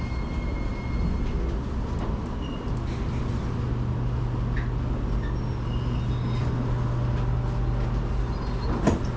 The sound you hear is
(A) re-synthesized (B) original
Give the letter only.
B